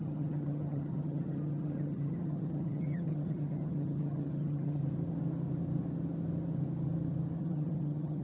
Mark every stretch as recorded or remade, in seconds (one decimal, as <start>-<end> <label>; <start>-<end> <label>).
0.0-4.8 remade; 4.8-7.4 recorded; 7.4-8.2 remade